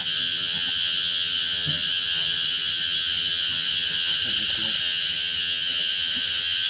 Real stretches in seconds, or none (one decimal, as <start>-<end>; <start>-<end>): 4.2-4.8